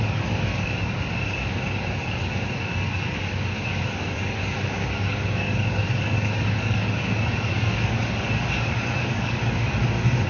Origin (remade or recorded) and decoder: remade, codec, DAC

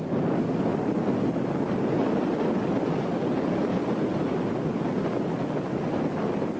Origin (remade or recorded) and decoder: recorded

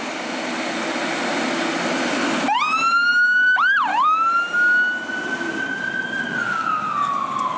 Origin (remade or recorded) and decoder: recorded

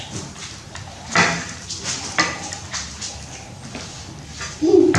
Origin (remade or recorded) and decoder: recorded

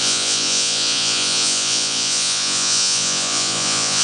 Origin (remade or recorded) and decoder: remade, vocoder, Vocos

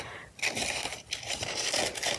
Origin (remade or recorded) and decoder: remade, vocoder, BigVGAN v2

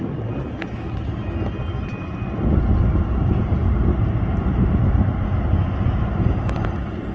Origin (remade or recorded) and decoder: recorded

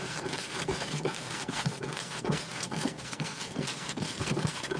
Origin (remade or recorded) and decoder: remade, codec, SNAC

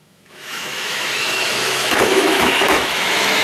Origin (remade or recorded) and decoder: remade, autoencoder, DAC-VAE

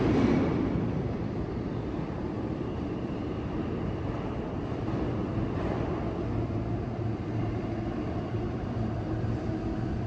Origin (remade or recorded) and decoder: remade, vocoder, BigVGAN v2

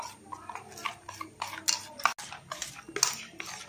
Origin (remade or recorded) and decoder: recorded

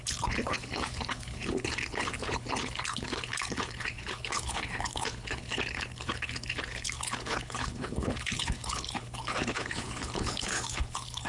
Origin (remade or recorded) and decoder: remade, codec, HILCodec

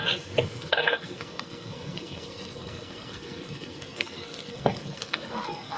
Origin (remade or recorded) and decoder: remade, codec, SNAC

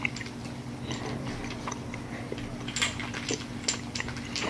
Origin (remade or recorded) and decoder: recorded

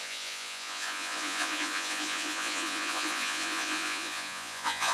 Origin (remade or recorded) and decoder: remade, vocoder, Vocos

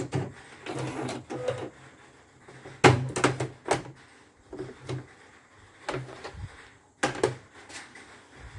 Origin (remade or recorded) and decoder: recorded